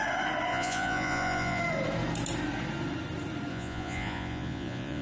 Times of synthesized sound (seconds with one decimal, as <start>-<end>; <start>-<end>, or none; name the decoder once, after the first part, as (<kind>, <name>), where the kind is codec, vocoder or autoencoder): 0.5-1.6 (vocoder, Vocos); 3.5-5.0